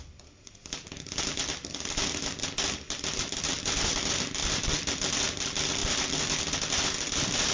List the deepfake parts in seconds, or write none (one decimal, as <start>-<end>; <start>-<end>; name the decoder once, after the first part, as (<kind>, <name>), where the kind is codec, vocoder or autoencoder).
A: none